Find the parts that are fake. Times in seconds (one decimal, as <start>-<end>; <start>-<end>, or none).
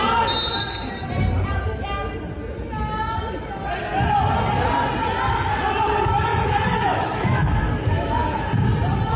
6.3-8.1